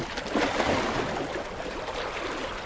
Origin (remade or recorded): recorded